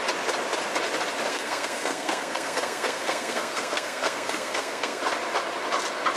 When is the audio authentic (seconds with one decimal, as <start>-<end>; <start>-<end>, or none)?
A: 0.0-1.3; 5.0-6.2